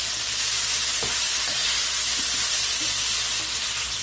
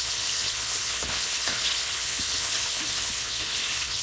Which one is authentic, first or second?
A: first